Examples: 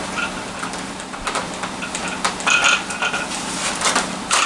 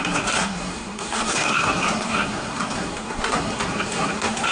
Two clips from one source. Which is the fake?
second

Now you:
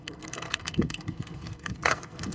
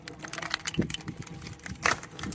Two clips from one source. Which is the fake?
first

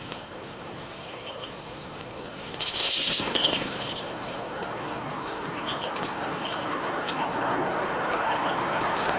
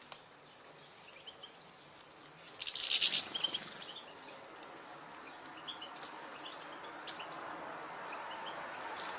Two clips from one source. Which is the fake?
first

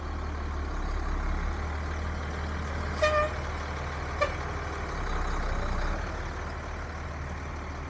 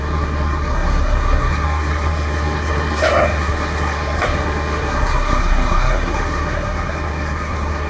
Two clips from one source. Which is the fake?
second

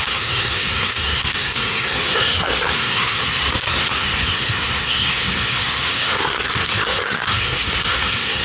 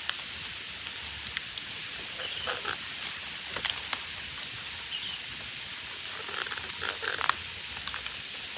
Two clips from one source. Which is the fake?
first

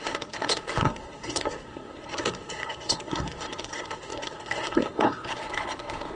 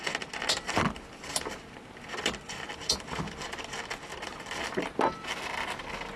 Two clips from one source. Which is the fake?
first